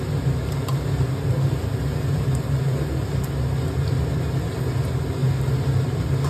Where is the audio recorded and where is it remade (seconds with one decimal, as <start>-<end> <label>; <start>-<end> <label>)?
0.0-6.3 recorded

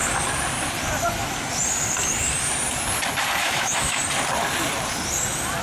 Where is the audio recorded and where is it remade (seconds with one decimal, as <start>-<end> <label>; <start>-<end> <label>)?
0.0-3.4 recorded; 3.4-4.0 remade; 4.0-5.6 recorded

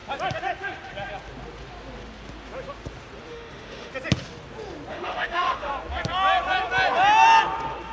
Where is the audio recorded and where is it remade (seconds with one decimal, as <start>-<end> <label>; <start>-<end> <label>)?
0.0-3.3 recorded; 3.3-3.9 remade; 3.9-4.9 recorded; 4.9-5.7 remade; 5.7-7.9 recorded

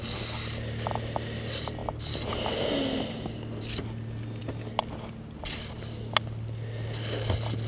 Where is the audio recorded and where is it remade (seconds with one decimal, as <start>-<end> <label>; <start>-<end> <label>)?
0.0-7.7 recorded

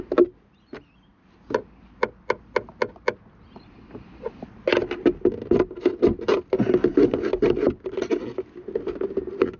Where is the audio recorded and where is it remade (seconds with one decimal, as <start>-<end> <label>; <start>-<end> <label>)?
0.0-9.6 recorded

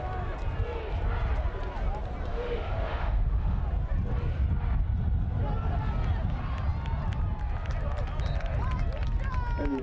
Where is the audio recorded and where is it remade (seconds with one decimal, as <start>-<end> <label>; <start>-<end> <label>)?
0.0-2.3 recorded; 2.3-3.6 remade; 3.6-9.8 recorded

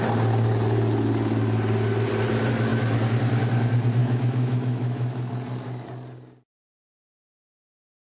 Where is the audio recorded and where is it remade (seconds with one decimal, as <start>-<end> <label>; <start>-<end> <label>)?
0.0-4.0 recorded; 4.0-5.3 remade; 5.3-8.2 recorded